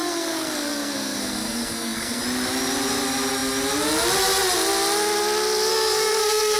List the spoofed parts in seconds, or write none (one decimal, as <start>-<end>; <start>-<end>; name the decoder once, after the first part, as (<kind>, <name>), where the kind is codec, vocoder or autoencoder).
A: 0.0-2.2 (codec, SNAC); 5.7-6.6